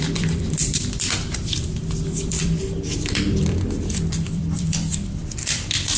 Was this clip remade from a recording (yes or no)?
yes